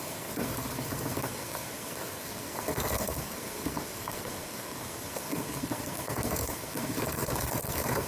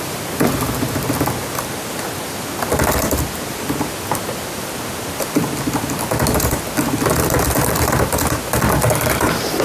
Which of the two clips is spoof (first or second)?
first